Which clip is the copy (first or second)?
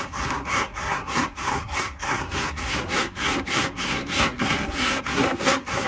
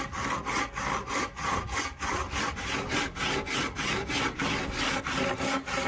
first